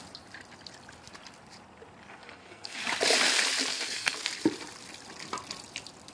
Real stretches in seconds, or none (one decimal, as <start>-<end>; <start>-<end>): 0.0-2.1; 2.8-3.7; 4.3-6.1